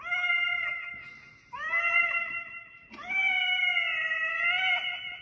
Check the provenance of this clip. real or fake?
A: real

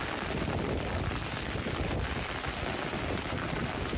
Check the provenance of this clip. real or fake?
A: real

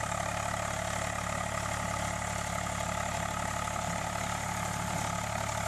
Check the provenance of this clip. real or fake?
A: real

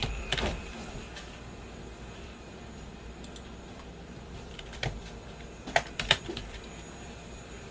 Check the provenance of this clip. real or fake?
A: fake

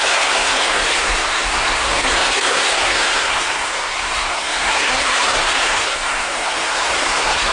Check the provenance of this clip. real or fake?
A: fake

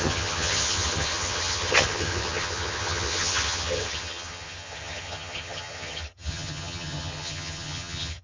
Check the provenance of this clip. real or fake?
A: fake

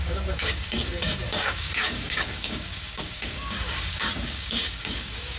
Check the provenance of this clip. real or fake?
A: fake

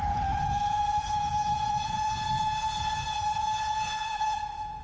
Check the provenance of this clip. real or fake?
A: fake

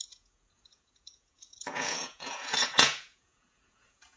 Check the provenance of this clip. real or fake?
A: fake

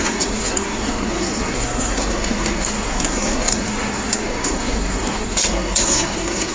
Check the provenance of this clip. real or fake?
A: fake